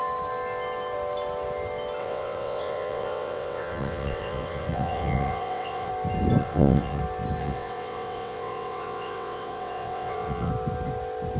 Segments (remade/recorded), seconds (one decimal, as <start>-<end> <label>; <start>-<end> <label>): 0.0-2.0 recorded; 2.0-5.9 remade; 5.9-6.4 recorded; 6.4-7.0 remade; 7.0-7.4 recorded; 7.4-10.5 remade; 10.5-11.4 recorded